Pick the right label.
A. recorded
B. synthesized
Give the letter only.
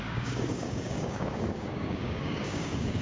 B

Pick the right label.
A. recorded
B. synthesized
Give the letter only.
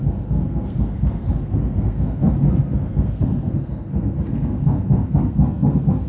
B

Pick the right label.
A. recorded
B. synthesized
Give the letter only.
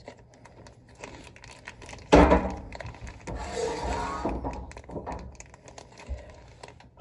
A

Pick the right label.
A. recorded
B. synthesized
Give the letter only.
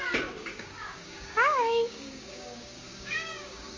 B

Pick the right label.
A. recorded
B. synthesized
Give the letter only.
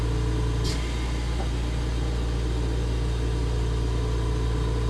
A